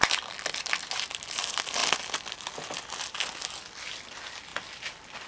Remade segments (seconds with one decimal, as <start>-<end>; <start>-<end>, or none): none